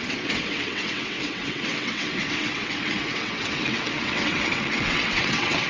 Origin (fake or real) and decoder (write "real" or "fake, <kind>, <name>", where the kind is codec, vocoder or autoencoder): fake, vocoder, WaveNeXt